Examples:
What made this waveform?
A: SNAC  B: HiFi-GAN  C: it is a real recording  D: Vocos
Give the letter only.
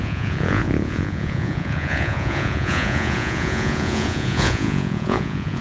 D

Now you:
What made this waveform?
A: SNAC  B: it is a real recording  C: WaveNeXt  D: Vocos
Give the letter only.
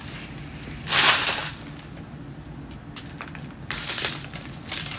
B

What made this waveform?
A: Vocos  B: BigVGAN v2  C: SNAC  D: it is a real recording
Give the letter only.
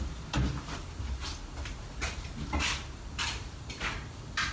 D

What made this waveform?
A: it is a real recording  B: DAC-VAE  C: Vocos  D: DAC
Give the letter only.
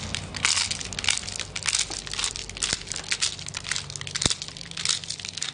A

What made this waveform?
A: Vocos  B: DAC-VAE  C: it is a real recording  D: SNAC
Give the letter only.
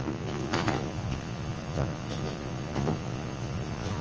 A